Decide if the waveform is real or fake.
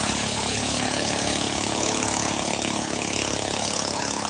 fake